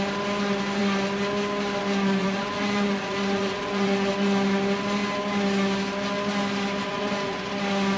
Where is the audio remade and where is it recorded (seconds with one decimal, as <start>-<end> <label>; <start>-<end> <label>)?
0.0-2.2 recorded; 2.2-4.1 remade; 4.1-6.9 recorded; 6.9-7.5 remade; 7.5-8.0 recorded